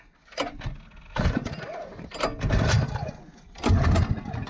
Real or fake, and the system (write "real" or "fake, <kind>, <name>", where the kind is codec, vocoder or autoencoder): real